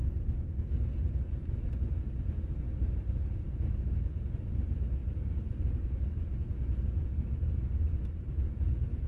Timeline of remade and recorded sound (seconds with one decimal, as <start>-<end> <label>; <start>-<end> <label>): 0.0-9.1 recorded